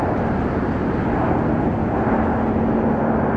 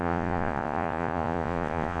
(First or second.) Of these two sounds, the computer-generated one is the second